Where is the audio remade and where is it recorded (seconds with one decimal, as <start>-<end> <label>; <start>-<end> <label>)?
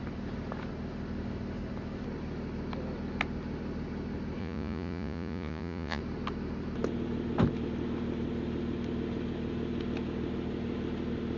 0.0-4.4 recorded; 4.4-6.0 remade; 6.0-11.4 recorded